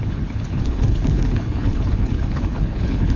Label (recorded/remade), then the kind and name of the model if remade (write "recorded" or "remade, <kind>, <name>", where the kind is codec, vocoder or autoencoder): remade, codec, HILCodec